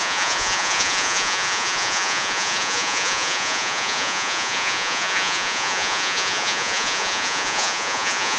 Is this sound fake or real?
fake